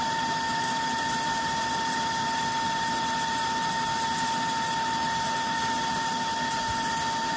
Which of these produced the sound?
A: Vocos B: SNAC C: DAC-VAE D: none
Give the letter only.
D